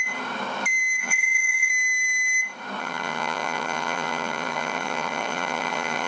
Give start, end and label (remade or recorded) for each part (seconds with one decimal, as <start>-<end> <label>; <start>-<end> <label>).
0.0-1.0 recorded; 1.0-1.7 remade; 1.7-2.8 recorded; 2.8-6.1 remade